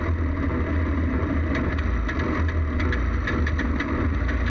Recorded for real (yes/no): yes